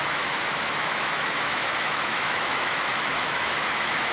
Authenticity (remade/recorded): remade